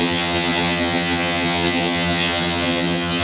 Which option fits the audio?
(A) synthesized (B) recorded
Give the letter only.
A